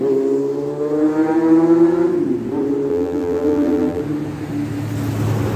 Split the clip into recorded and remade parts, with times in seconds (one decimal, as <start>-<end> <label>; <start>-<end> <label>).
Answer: 0.0-2.9 recorded; 2.9-4.0 remade; 4.0-5.6 recorded